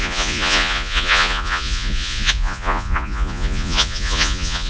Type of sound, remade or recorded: remade